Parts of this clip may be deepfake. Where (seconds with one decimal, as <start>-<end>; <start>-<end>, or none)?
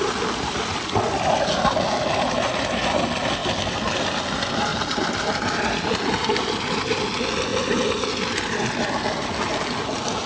4.7-6.7